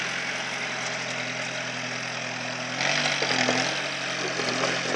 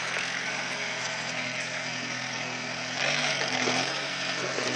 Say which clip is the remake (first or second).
second